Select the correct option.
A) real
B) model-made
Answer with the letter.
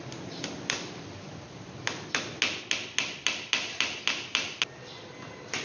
A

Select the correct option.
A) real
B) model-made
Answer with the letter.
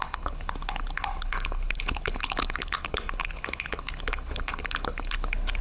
B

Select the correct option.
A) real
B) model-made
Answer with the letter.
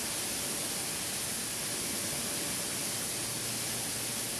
A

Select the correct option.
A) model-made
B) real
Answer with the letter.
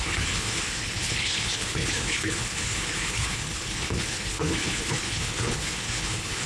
A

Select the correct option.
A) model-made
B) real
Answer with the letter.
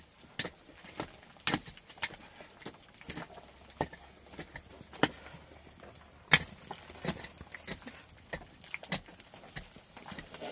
B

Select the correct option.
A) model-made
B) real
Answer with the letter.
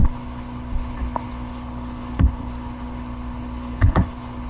A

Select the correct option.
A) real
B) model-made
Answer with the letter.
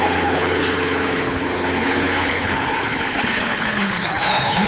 B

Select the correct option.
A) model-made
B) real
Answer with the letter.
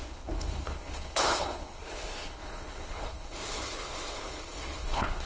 A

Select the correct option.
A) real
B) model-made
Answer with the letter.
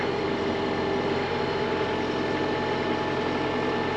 A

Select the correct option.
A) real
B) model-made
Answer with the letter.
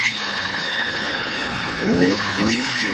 B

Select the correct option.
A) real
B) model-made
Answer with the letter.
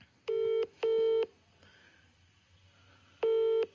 A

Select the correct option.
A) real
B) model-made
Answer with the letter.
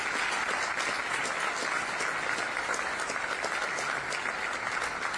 A